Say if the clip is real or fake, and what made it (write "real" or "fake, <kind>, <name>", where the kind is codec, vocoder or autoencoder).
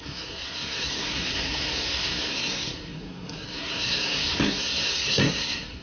fake, codec, SNAC